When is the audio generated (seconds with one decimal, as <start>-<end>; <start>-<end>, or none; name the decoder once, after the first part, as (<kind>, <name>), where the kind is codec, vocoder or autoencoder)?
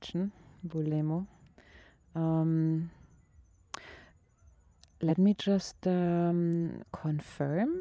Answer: 0.0-0.5 (vocoder, Vocos); 5.1-7.0